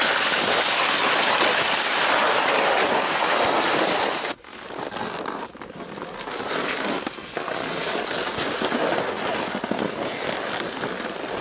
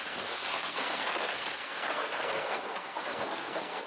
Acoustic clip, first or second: first